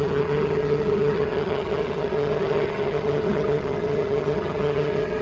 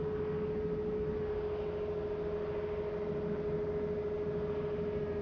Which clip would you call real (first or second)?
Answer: second